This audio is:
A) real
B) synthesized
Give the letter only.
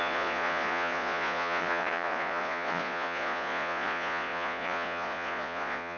B